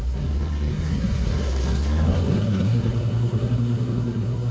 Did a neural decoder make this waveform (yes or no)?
yes